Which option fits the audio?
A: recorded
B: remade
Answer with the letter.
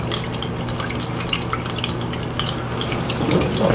A